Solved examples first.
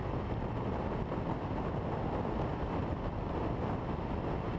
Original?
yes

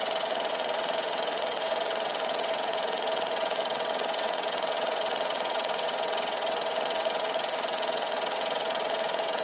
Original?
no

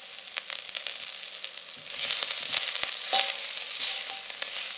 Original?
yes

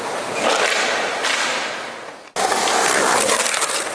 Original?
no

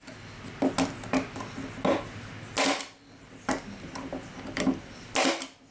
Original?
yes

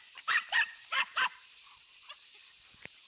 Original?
no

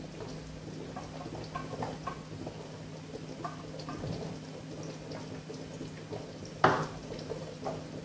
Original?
yes